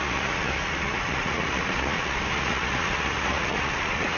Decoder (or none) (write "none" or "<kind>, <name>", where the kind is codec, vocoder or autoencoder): vocoder, Vocos